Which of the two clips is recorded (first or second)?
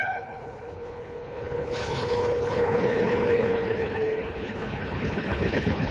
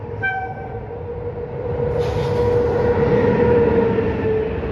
second